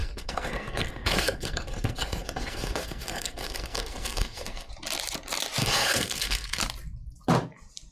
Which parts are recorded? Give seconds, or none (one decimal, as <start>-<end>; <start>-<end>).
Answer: 4.7-5.6; 6.6-7.9